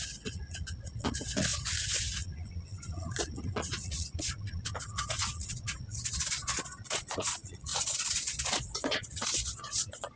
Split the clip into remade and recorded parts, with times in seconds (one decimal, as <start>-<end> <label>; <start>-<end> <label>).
0.0-1.5 remade; 1.5-2.0 recorded; 2.0-10.2 remade